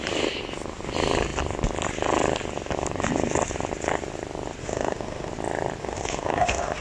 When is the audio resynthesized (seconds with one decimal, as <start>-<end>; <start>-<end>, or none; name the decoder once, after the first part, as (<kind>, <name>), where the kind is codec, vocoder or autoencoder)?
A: 4.6-5.3 (autoencoder, DAC-VAE); 5.8-6.8